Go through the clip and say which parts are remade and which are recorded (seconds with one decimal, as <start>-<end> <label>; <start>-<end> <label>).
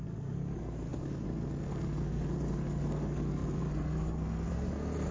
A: 0.0-5.1 remade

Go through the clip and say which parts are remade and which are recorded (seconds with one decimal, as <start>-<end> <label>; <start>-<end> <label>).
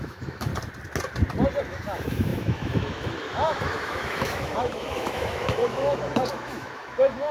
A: 0.0-0.5 remade; 0.5-1.6 recorded; 1.6-7.3 remade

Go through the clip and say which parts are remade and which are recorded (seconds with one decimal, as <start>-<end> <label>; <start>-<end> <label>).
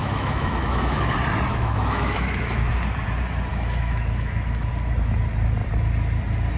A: 0.0-1.1 remade; 1.1-1.5 recorded; 1.5-2.7 remade; 2.7-3.5 recorded; 3.5-4.7 remade; 4.7-6.6 recorded